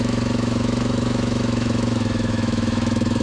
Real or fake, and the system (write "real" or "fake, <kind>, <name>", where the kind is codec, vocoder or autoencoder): fake, autoencoder, DAC-VAE